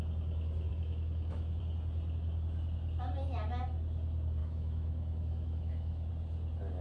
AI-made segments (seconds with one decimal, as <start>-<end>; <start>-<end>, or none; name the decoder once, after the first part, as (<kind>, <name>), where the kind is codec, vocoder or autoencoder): 0.7-1.6 (autoencoder, DAC-VAE); 4.4-6.1